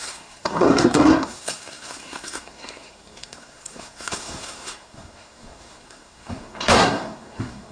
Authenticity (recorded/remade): remade